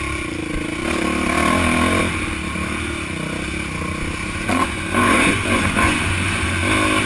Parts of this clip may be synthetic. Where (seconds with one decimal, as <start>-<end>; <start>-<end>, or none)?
4.2-6.5